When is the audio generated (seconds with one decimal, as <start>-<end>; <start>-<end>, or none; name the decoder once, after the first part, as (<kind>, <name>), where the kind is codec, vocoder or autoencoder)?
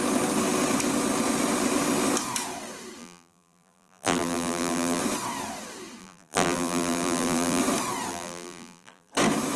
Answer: 3.0-5.0 (vocoder, BigVGAN v2); 6.0-7.6; 8.1-9.1